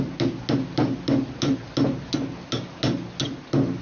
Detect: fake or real real